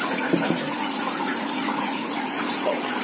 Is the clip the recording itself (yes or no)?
no